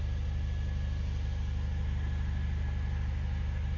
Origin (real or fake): real